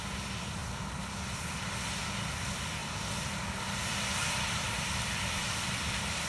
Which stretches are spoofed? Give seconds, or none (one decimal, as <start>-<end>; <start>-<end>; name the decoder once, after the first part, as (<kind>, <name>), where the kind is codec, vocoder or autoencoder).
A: 0.6-1.4 (vocoder, BigVGAN v2); 2.8-6.3